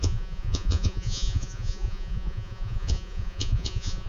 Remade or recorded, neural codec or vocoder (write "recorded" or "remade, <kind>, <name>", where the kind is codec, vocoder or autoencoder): remade, vocoder, Vocos